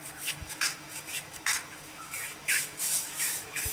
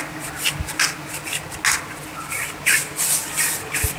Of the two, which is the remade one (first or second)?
first